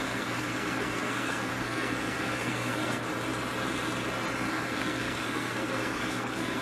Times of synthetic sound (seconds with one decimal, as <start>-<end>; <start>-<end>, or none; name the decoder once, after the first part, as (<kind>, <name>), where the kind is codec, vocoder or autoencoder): 0.0-3.1 (codec, SNAC); 4.5-6.6